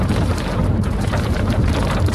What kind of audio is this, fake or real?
fake